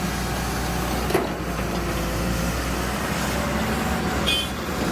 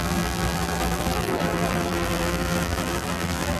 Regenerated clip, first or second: second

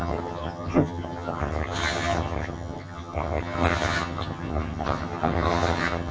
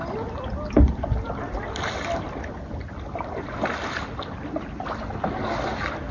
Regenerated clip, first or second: first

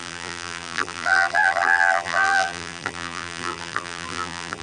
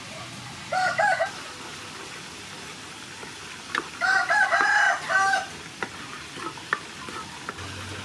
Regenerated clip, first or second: first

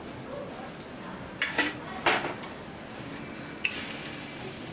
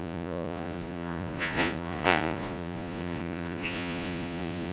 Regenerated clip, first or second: second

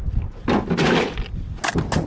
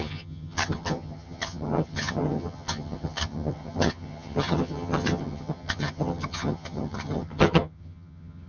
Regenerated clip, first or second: second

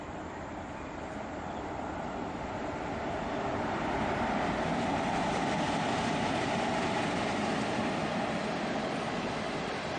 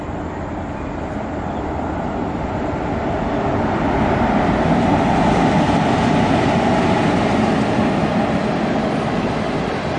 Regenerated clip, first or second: first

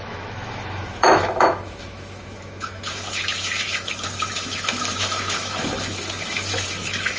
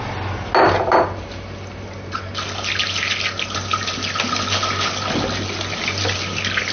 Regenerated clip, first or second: first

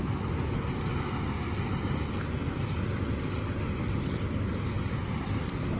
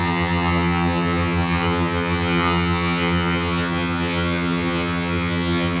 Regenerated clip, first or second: second